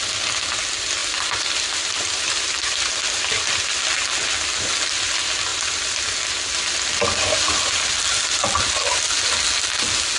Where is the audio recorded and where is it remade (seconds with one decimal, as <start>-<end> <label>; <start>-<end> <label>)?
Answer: 0.0-1.0 recorded; 1.0-3.6 remade; 3.6-10.2 recorded